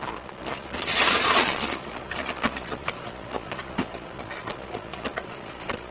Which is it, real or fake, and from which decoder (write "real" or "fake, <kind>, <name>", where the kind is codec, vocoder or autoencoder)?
fake, vocoder, Vocos